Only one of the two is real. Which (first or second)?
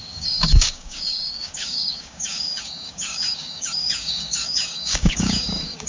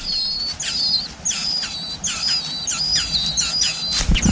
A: second